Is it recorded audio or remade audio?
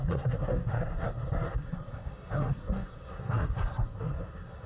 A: remade